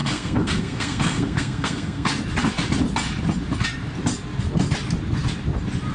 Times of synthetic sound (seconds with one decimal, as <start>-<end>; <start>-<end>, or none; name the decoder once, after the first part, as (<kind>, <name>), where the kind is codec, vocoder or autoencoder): 0.0-2.1 (codec, SNAC)